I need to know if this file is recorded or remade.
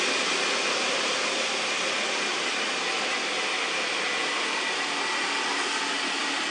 recorded